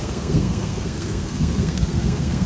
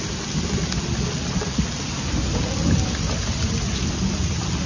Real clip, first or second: second